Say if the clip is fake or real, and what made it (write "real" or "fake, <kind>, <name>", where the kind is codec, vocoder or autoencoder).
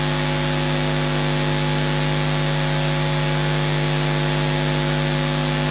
real